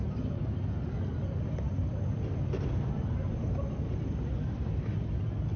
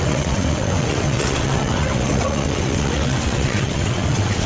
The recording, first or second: first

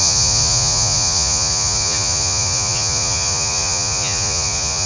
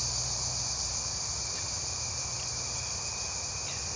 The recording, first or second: second